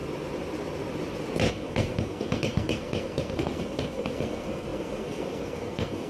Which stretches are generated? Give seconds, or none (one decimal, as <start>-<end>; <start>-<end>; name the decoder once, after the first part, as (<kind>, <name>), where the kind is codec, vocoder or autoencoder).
1.5-6.1 (codec, SNAC)

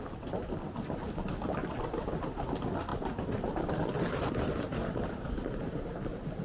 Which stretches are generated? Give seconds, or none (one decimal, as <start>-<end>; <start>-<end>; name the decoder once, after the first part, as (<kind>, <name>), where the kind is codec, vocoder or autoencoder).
2.9-4.3 (vocoder, BigVGAN v2); 4.7-5.2